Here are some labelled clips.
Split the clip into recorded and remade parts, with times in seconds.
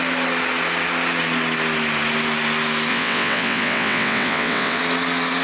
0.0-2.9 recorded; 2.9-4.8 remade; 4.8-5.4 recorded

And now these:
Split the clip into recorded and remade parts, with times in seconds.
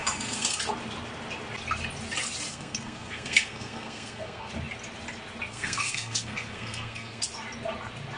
0.0-0.6 remade; 0.6-2.5 recorded; 2.5-4.5 remade; 4.5-5.5 recorded; 5.5-7.2 remade; 7.2-8.2 recorded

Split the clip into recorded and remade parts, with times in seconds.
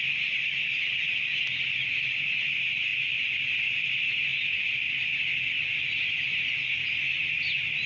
0.0-7.9 recorded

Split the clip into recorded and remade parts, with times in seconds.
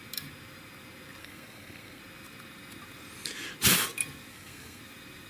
0.0-1.2 recorded; 1.2-2.0 remade; 2.0-4.3 recorded; 4.3-4.8 remade; 4.8-5.3 recorded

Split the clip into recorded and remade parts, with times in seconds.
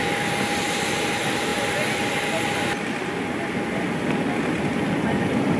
0.0-5.6 recorded